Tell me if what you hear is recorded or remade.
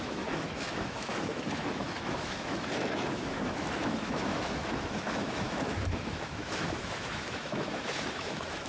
remade